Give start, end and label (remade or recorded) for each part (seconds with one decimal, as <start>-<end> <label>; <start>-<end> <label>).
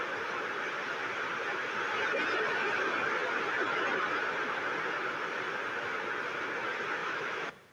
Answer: 0.0-7.0 recorded; 7.0-7.7 remade